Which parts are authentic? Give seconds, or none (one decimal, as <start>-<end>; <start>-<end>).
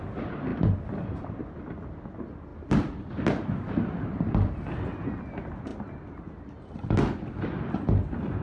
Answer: 0.0-8.4